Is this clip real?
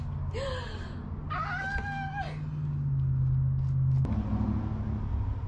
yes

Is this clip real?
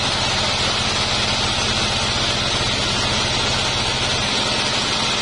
yes